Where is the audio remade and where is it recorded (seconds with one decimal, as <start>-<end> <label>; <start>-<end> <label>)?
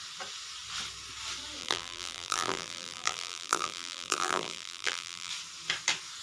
0.0-1.6 recorded; 1.6-5.3 remade; 5.3-6.2 recorded